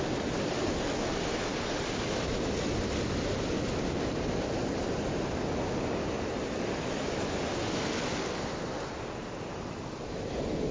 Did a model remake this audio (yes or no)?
no